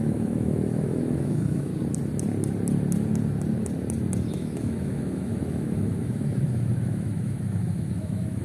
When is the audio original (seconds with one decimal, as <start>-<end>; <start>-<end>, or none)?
1.7-4.3